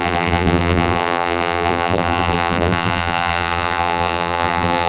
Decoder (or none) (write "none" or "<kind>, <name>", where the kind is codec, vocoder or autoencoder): vocoder, BigVGAN v2